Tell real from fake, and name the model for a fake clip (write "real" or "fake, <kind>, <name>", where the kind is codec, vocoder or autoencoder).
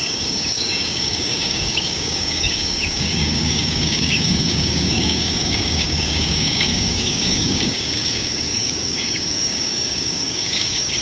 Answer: fake, codec, DAC